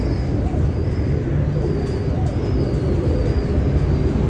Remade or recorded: recorded